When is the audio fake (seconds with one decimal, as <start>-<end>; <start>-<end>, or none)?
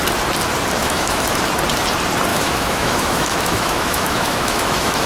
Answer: 0.8-1.4; 2.3-5.1